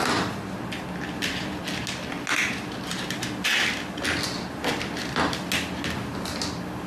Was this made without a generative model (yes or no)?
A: yes